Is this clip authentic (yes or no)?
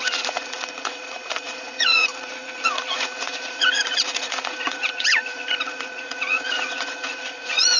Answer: no